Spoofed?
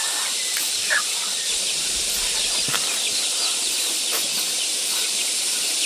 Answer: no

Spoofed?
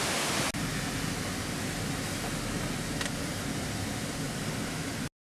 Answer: no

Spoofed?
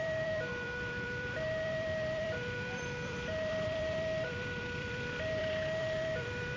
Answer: yes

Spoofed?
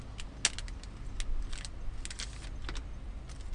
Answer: no